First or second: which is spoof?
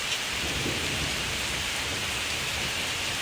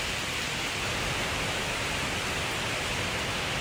first